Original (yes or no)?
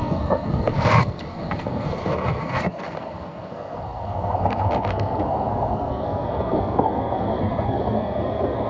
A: no